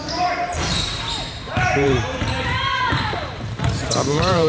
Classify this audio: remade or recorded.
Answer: remade